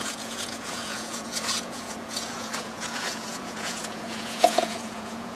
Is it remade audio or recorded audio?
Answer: remade